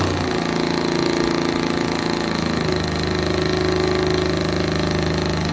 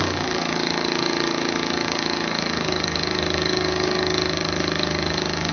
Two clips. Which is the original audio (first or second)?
first